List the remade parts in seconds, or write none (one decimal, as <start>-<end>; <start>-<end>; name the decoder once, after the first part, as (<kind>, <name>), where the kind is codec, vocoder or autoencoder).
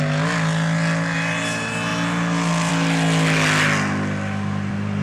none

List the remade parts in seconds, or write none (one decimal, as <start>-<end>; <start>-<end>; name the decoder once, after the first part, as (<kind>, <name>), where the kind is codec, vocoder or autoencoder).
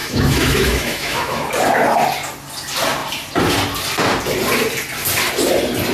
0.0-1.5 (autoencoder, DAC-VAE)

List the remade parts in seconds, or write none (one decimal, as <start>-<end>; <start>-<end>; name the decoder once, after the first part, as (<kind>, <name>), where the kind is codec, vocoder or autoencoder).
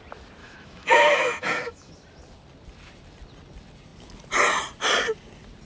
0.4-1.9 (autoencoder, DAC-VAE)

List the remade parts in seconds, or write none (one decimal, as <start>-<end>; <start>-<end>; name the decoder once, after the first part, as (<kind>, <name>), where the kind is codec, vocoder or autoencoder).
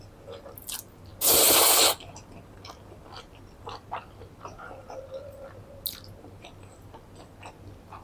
none